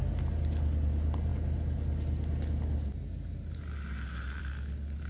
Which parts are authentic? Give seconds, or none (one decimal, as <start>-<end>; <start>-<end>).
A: 0.0-5.1